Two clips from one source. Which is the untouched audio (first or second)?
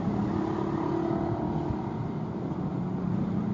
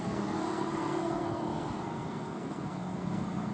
first